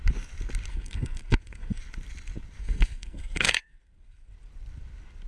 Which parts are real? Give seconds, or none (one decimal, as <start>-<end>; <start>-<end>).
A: 0.0-0.7; 1.8-2.6; 4.3-5.3

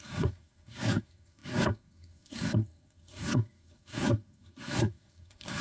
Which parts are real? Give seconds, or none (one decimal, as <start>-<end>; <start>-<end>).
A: none